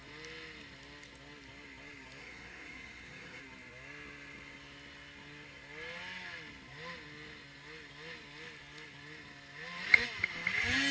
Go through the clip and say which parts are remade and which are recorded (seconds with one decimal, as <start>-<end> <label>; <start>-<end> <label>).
0.0-2.2 recorded; 2.2-3.4 remade; 3.4-10.9 recorded